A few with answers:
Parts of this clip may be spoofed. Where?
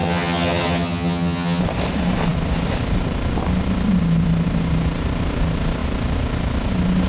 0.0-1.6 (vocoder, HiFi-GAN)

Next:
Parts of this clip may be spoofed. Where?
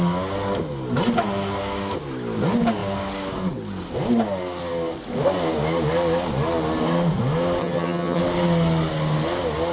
7.6-8.2 (vocoder, HiFi-GAN)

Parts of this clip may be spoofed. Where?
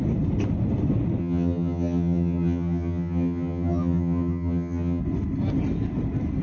1.2-5.0 (vocoder, HiFi-GAN)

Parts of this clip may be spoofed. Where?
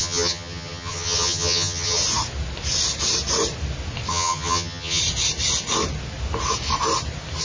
0.0-2.0 (vocoder, HiFi-GAN); 4.1-5.0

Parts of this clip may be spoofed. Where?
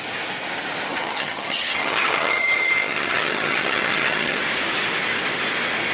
0.9-4.4 (vocoder, HiFi-GAN)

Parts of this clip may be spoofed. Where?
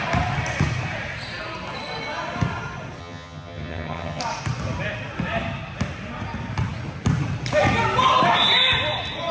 3.0-4.2 (vocoder, HiFi-GAN)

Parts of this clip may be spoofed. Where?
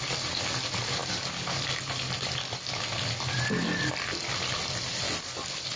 none